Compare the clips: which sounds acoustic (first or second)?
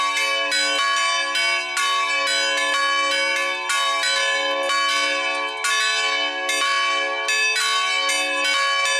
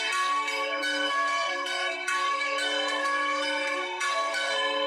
first